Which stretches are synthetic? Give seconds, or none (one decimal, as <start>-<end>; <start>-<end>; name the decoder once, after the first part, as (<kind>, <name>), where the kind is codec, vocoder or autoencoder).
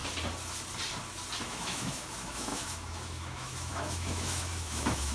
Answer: 1.4-5.1 (autoencoder, DAC-VAE)